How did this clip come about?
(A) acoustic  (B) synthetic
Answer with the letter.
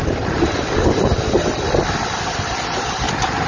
A